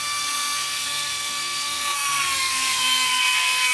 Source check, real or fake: fake